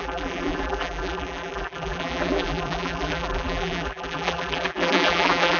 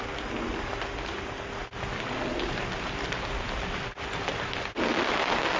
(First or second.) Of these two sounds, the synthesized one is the first